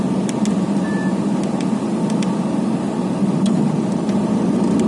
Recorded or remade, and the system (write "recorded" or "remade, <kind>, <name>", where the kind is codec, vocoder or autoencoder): recorded